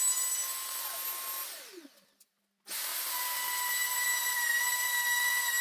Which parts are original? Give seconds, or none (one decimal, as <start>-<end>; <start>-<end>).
0.0-5.6